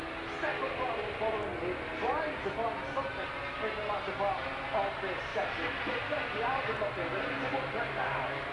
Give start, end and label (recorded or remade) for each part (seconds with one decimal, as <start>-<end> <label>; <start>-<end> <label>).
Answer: 0.0-0.6 recorded; 0.6-1.3 remade; 1.3-5.3 recorded; 5.3-6.6 remade; 6.6-8.5 recorded